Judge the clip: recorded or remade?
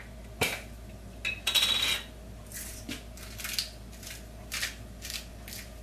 recorded